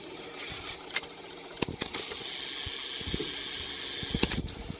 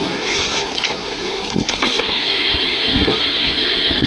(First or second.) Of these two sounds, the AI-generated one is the second